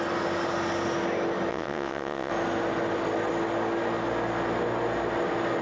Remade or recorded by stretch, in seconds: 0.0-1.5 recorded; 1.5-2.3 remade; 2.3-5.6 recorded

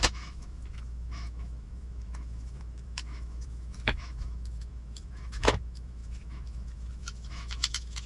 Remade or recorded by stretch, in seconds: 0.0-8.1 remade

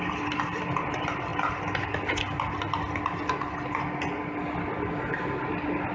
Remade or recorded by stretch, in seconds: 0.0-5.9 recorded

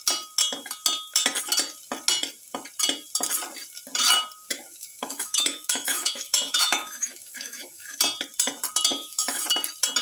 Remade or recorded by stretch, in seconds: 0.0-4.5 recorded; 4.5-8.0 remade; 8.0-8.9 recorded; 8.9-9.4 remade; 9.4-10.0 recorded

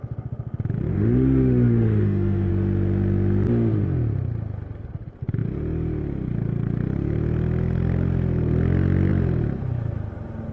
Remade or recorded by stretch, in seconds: 0.0-0.9 recorded; 0.9-2.5 remade; 2.5-10.5 recorded